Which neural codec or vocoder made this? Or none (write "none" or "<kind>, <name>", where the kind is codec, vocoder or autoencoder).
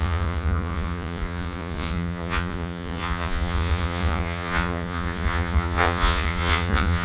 vocoder, Vocos